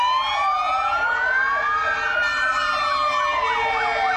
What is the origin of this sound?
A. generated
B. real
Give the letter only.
B